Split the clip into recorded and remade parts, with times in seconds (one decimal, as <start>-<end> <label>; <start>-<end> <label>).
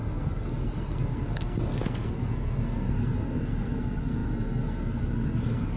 0.0-5.8 remade